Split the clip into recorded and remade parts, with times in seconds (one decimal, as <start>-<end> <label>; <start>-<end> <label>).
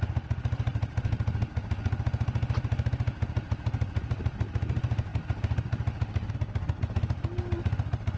0.0-8.2 recorded